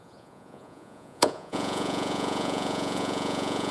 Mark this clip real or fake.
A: fake